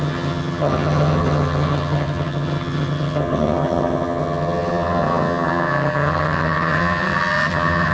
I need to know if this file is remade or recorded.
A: remade